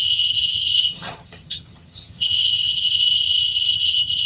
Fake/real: fake